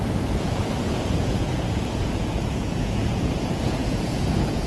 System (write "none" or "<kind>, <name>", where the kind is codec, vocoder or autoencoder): vocoder, Vocos